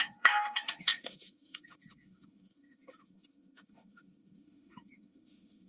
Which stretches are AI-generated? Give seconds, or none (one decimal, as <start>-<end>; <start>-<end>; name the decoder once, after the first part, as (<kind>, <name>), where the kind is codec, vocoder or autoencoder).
0.0-5.7 (autoencoder, DAC-VAE)